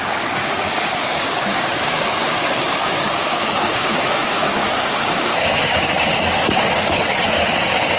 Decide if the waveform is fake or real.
fake